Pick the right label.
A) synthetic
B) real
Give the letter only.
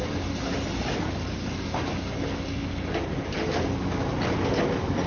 B